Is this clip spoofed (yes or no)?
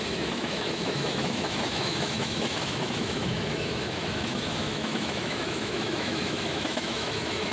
yes